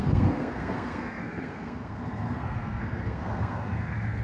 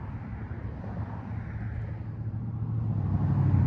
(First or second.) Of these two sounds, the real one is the second